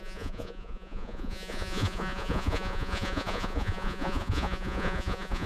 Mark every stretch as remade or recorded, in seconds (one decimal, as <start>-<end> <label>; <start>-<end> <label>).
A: 0.0-5.5 remade